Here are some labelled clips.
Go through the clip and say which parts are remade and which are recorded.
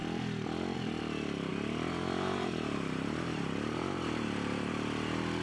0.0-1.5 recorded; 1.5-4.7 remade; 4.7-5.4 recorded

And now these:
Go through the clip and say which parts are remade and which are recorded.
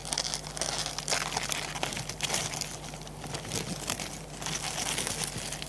0.0-5.7 recorded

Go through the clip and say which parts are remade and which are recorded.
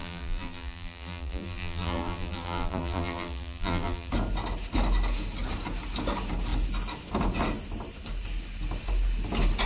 0.0-4.1 remade; 4.1-9.7 recorded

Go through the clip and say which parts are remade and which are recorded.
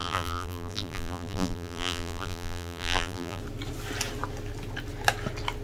0.0-3.4 remade; 3.4-5.6 recorded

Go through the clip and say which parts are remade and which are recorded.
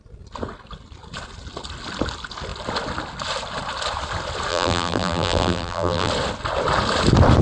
0.0-4.5 recorded; 4.5-6.1 remade; 6.1-7.4 recorded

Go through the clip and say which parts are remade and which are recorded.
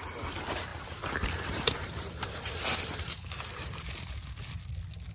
0.0-0.7 recorded; 0.7-3.8 remade; 3.8-5.1 recorded